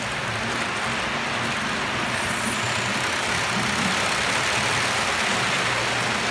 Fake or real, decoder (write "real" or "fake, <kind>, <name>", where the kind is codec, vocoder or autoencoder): real